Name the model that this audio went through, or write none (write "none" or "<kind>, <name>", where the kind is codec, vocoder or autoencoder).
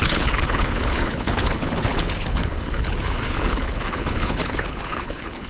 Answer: codec, HILCodec